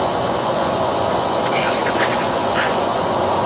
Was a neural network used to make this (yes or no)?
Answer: yes